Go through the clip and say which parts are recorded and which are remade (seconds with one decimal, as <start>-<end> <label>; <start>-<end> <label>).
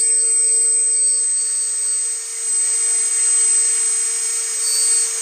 0.0-5.2 recorded